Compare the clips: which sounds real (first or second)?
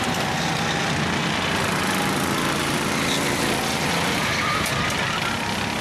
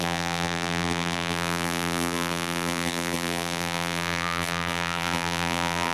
first